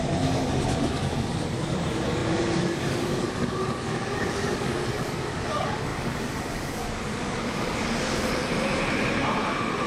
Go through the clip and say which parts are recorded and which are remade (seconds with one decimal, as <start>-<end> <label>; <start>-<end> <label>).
0.0-8.4 remade; 8.4-9.9 recorded